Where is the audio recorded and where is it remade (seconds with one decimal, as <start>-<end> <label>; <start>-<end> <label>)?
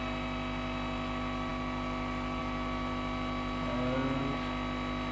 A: 0.0-5.1 recorded